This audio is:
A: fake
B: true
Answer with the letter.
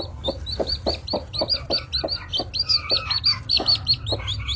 B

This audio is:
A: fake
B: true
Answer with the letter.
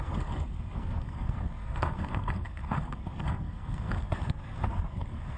A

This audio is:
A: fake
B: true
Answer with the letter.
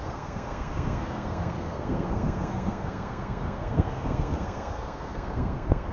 A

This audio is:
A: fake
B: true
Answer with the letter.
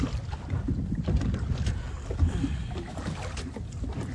B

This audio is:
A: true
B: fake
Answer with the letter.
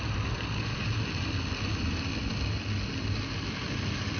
A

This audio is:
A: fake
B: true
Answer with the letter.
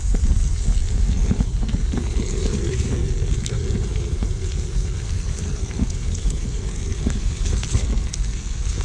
A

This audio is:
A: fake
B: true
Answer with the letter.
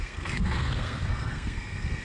A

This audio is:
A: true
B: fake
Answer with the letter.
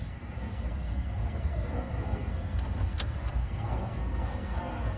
B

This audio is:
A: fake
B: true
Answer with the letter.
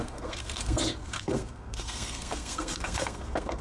A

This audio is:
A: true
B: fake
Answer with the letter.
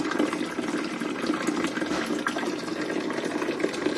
A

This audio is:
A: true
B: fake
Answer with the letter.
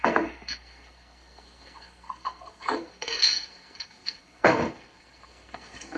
B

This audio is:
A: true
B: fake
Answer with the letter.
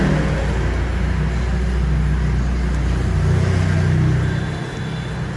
A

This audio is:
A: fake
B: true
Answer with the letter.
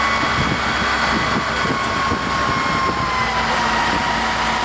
B